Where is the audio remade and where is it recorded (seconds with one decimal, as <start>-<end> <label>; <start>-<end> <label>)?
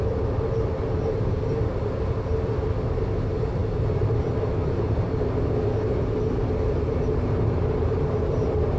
0.0-1.5 recorded; 1.5-2.1 remade; 2.1-8.8 recorded